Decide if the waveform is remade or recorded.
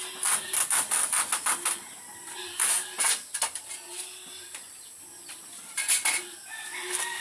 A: remade